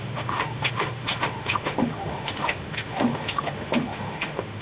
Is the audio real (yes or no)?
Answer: no